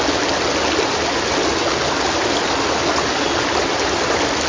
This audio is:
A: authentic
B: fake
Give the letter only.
A